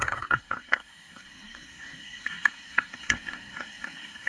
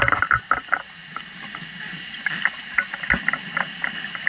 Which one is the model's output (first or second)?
first